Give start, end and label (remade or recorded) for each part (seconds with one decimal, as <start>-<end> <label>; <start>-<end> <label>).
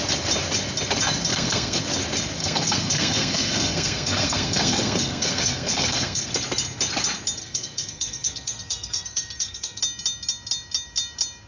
0.0-1.3 recorded; 1.3-1.8 remade; 1.8-2.4 recorded; 2.4-6.3 remade; 6.3-7.4 recorded; 7.4-9.8 remade; 9.8-11.5 recorded